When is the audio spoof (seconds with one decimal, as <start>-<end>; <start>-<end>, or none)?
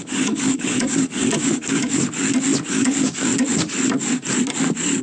0.0-2.0; 2.7-3.3